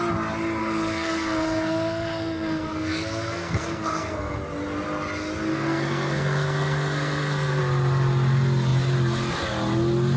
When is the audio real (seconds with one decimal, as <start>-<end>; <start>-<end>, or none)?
0.0-0.6; 4.4-5.5; 7.6-10.2